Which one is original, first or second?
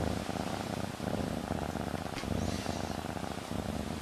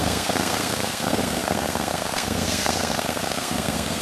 first